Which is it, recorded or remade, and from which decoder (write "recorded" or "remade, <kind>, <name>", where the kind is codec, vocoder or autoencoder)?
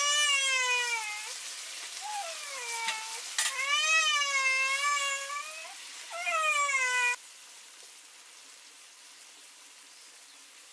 recorded